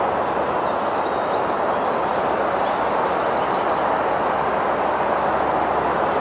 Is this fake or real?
real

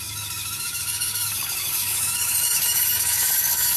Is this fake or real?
fake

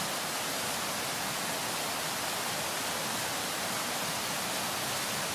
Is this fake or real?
real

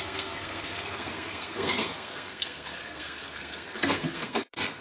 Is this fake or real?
fake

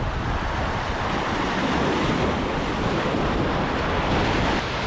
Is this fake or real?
real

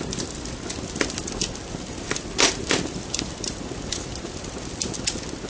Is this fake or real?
real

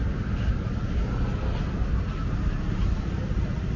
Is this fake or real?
real